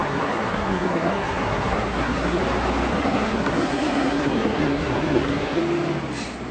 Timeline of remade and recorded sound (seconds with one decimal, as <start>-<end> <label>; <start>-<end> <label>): 0.0-2.4 remade; 2.4-2.9 recorded; 2.9-5.6 remade; 5.6-6.5 recorded